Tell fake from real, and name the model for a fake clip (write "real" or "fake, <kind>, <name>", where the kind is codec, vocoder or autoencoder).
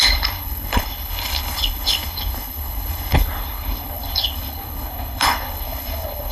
fake, codec, HILCodec